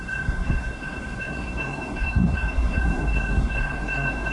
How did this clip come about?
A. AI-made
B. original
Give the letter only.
A